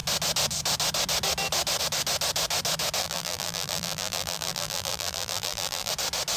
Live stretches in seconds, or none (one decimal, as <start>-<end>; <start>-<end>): 0.0-3.0; 5.9-6.4